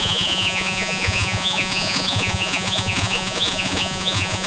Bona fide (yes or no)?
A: no